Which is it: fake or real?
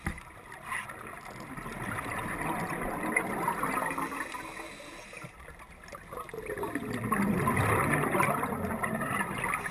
real